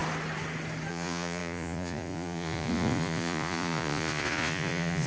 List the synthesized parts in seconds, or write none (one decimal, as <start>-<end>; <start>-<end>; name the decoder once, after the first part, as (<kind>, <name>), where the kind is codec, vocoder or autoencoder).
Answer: 0.9-5.1 (vocoder, Vocos)